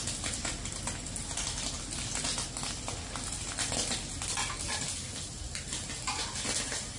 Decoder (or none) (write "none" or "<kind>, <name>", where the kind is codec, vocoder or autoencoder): none